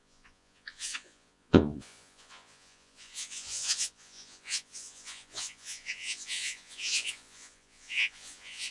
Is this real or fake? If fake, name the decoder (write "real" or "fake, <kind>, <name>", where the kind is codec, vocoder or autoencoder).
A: fake, vocoder, Vocos